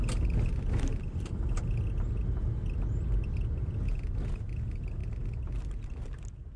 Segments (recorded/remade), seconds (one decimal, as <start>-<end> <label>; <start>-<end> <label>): 0.0-6.6 recorded